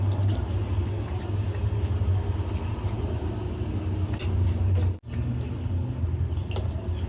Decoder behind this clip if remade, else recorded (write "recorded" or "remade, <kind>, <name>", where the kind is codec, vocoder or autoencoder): recorded